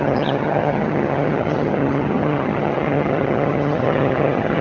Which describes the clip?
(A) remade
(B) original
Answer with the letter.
A